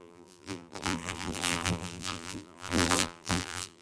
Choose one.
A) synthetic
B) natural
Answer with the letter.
A